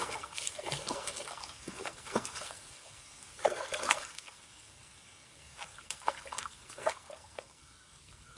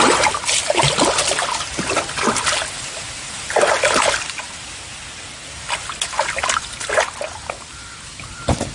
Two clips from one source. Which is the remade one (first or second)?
first